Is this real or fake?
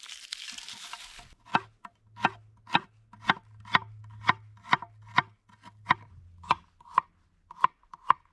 real